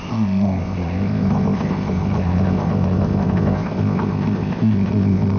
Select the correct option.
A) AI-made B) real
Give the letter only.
A